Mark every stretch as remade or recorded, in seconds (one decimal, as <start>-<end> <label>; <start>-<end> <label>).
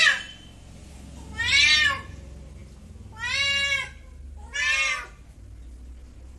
0.0-6.4 recorded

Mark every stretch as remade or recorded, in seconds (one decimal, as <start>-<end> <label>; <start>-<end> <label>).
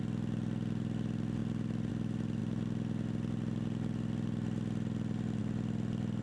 0.0-6.2 recorded